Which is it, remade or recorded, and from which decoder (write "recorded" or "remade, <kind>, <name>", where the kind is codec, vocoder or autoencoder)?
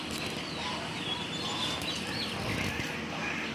recorded